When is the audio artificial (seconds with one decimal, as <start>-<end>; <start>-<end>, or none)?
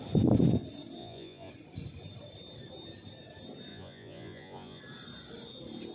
1.0-1.5; 3.7-4.8